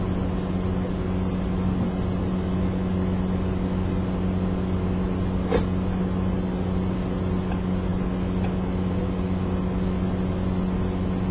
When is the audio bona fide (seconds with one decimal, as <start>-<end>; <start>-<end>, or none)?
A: 0.0-11.3